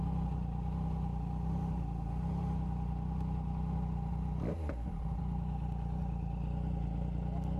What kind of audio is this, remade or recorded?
recorded